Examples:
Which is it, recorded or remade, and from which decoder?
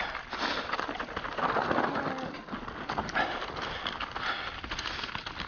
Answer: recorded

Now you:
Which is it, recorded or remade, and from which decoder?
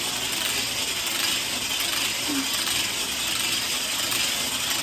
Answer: recorded